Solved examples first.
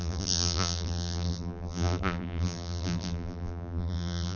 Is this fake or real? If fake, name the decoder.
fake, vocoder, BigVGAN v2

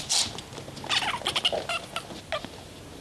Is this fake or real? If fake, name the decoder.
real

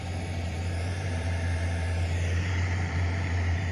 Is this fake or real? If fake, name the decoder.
fake, vocoder, BigVGAN v2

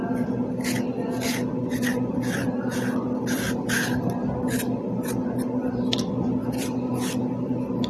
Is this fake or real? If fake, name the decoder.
real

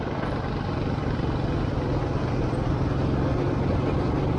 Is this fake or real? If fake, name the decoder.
real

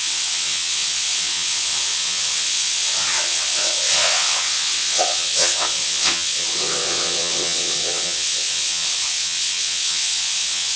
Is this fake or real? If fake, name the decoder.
fake, vocoder, WaveNeXt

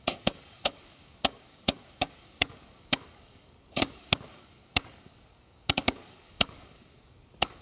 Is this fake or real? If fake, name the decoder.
fake, codec, DAC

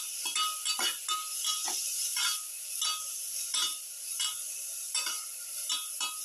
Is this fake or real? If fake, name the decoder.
real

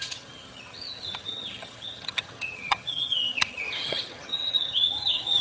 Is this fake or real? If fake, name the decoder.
fake, vocoder, HiFi-GAN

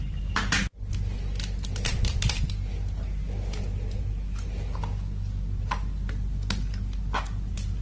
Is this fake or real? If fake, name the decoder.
real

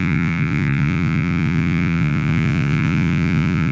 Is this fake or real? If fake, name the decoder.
fake, vocoder, Vocos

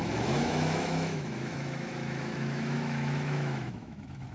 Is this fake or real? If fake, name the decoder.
fake, autoencoder, DAC-VAE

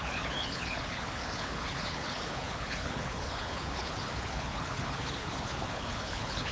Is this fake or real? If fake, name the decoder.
fake, codec, HILCodec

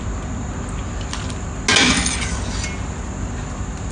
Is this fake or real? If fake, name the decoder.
real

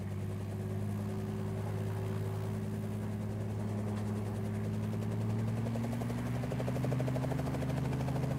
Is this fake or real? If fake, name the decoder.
real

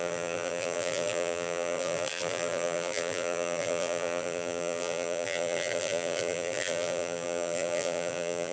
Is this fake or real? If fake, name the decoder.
fake, vocoder, BigVGAN v2